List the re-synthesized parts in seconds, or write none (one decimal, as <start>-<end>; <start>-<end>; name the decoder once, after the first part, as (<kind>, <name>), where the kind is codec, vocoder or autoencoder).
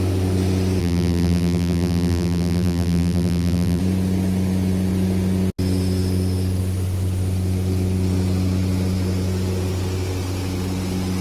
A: 0.8-3.8 (vocoder, BigVGAN v2)